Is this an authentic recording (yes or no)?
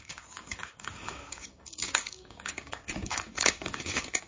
no